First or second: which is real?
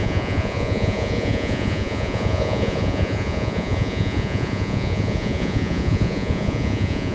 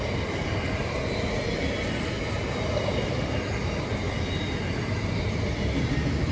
second